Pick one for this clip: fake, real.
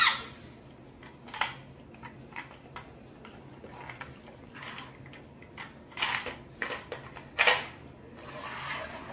real